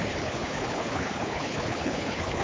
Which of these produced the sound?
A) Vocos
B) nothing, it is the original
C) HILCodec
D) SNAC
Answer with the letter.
C